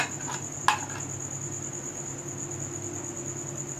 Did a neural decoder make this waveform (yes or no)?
no